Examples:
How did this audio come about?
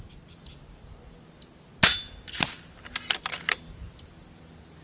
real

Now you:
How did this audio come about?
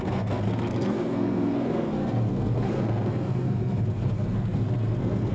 fake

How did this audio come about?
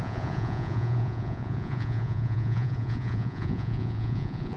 fake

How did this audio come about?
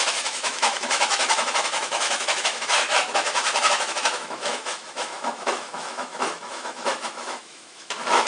fake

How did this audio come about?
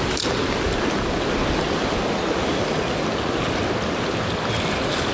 real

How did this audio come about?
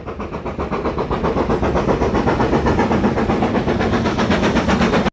real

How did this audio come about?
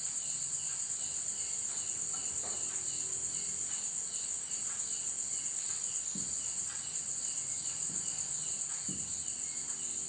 real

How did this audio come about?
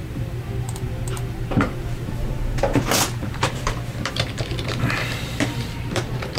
fake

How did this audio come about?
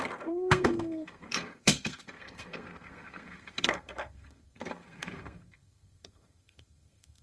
fake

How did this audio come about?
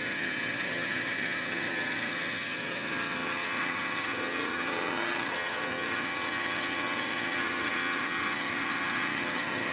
fake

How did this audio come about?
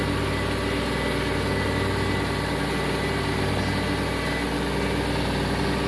real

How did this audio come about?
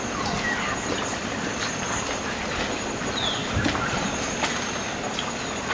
real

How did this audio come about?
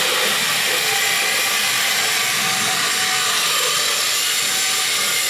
real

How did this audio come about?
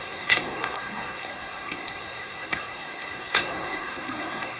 fake